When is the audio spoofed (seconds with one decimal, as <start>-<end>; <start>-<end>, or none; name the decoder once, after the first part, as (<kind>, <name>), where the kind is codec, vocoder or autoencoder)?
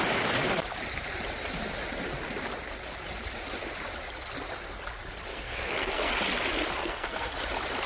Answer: 5.3-6.1 (codec, SNAC); 6.8-7.3